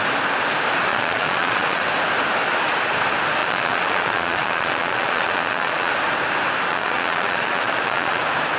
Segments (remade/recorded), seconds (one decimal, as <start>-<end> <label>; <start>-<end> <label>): 0.0-0.9 recorded; 0.9-1.8 remade; 1.8-3.4 recorded; 3.4-5.9 remade; 5.9-6.7 recorded; 6.7-8.2 remade; 8.2-8.6 recorded